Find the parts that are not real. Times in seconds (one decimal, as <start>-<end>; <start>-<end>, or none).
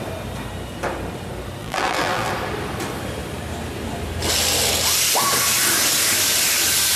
1.6-2.3